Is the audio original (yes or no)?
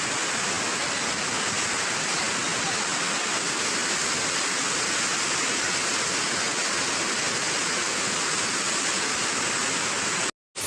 yes